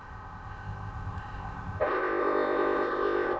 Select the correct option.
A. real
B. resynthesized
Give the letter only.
B